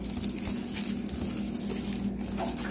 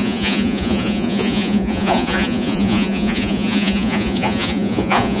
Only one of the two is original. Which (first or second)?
first